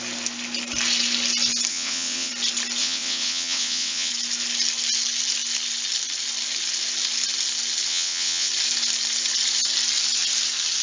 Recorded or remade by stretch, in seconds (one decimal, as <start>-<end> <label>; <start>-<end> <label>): 0.0-1.7 recorded; 1.7-2.3 remade; 2.3-2.8 recorded; 2.8-4.1 remade; 4.1-7.9 recorded; 7.9-8.5 remade; 8.5-10.8 recorded